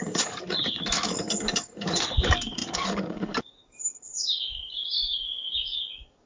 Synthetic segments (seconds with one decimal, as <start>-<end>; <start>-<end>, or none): 0.0-6.3